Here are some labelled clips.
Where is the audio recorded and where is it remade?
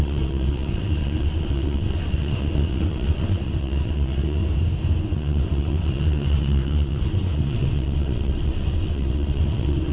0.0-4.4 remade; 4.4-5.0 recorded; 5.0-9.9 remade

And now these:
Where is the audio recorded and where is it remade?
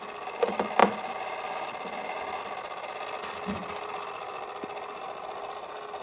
0.0-6.0 recorded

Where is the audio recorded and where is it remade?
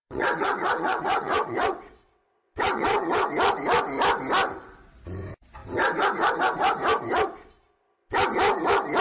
0.0-3.3 remade; 3.3-9.0 recorded